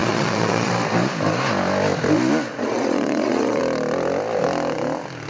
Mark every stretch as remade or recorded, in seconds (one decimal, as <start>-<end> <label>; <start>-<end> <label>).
0.0-0.7 remade; 0.7-2.5 recorded; 2.5-3.6 remade; 3.6-5.3 recorded